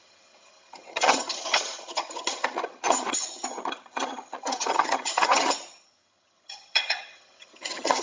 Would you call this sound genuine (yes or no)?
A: no